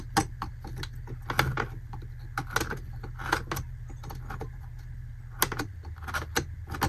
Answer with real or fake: real